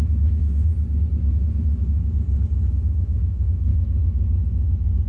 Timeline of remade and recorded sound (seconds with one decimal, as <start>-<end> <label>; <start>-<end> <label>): 0.0-0.7 remade; 0.7-1.3 recorded; 1.3-2.0 remade; 2.0-2.7 recorded; 2.7-3.7 remade; 3.7-5.1 recorded

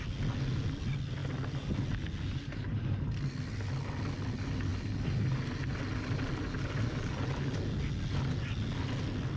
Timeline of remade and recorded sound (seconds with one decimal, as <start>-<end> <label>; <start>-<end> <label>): 0.0-9.4 recorded

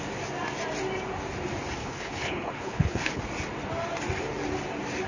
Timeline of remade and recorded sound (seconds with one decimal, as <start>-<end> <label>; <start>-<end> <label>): 0.0-1.8 recorded; 1.8-3.2 remade; 3.2-5.1 recorded

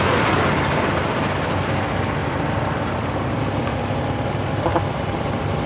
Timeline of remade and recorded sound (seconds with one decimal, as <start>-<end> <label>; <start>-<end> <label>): 0.0-2.2 recorded; 2.2-3.4 remade; 3.4-4.7 recorded; 4.7-5.7 remade

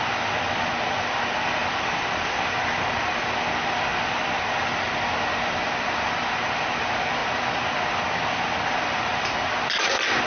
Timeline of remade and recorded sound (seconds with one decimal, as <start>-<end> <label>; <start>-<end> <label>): 0.0-1.6 recorded; 1.6-3.1 remade; 3.1-10.3 recorded

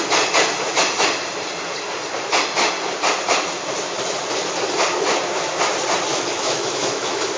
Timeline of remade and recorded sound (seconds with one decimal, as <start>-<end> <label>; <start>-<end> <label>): 0.0-6.1 recorded; 6.1-7.4 remade

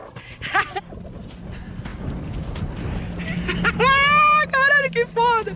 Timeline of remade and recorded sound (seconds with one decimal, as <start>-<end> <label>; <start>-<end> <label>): 0.0-5.6 recorded